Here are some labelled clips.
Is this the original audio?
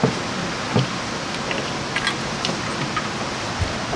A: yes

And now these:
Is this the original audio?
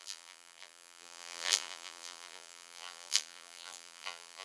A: no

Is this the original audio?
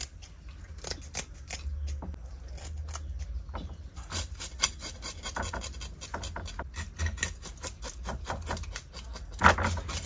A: yes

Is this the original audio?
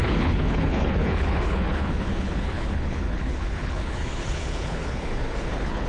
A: no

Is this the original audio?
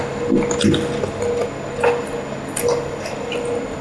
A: yes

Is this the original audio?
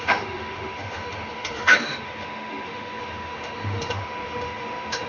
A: no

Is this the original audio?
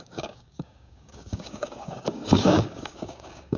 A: no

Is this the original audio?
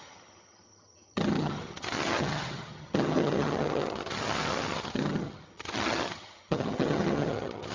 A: no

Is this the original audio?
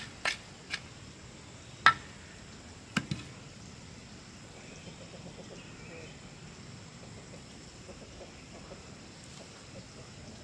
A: yes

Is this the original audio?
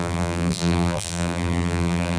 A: no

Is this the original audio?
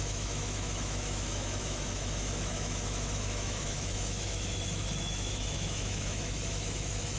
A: no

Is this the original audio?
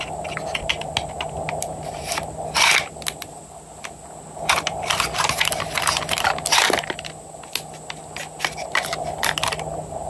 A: yes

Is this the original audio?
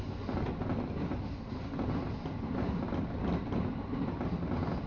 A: yes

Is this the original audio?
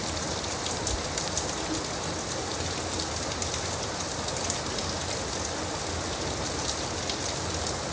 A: yes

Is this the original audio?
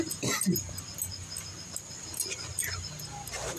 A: yes